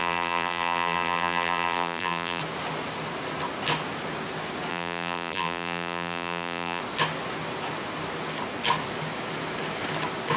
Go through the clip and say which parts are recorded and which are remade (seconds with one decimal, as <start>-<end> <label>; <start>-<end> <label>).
0.0-2.4 remade; 2.4-4.7 recorded; 4.7-6.8 remade; 6.8-10.4 recorded